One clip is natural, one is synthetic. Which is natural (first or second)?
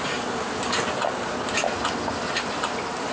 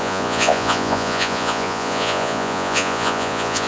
first